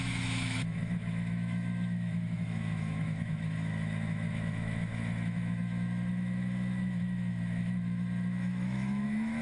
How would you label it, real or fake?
fake